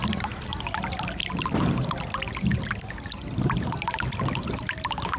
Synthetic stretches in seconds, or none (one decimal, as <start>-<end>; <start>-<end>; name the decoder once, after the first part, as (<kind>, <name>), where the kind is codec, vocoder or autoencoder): none